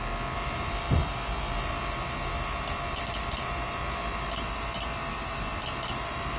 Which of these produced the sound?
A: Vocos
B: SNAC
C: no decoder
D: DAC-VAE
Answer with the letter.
C